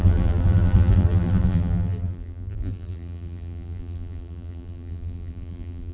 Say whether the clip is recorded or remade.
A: remade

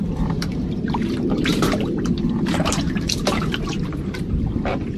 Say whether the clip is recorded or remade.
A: remade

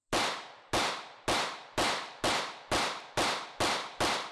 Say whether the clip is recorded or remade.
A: recorded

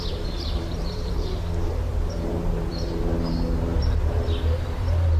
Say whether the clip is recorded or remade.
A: remade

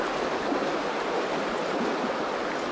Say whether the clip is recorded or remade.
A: recorded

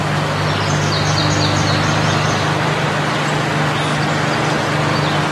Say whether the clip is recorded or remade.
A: recorded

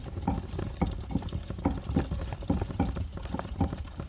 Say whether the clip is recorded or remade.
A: remade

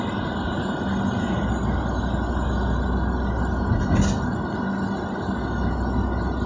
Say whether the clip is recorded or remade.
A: recorded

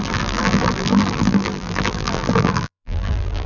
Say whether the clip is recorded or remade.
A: remade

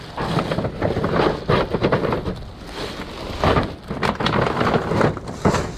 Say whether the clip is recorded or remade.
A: recorded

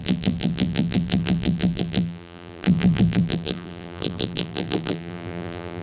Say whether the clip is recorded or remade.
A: remade